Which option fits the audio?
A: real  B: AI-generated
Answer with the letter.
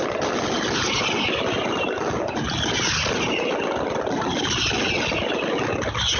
A